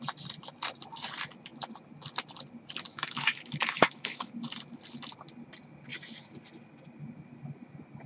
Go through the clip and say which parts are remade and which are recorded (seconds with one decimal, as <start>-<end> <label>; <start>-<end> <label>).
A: 0.0-2.9 recorded; 2.9-4.3 remade; 4.3-8.1 recorded